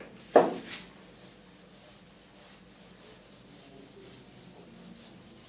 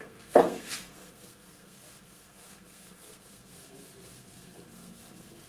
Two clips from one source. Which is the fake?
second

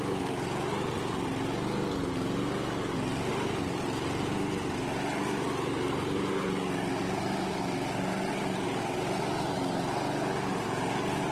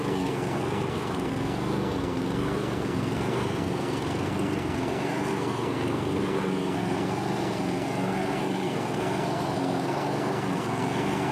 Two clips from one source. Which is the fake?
second